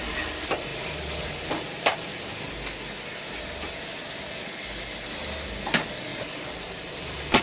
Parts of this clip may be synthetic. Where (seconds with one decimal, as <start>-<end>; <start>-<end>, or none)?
0.0-0.7; 1.5-2.1; 5.6-7.4